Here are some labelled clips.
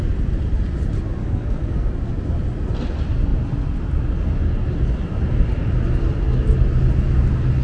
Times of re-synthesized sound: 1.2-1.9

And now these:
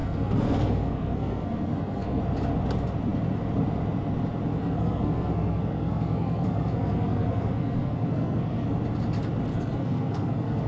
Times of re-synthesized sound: 0.0-2.2; 4.6-8.8; 9.5-10.7

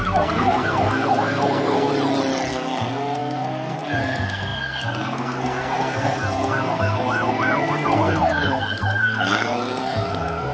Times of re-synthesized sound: 0.0-1.9; 2.5-10.5

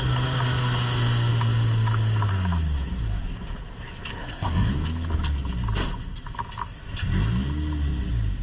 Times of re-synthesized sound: 4.1-4.7

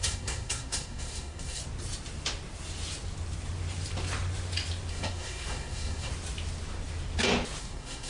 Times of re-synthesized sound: 0.0-1.6; 4.9-6.1; 7.6-8.1

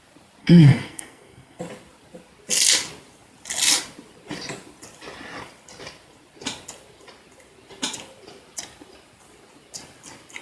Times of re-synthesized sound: 0.4-1.6

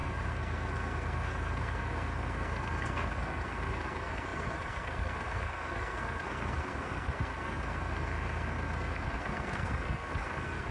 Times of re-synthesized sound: 0.0-10.7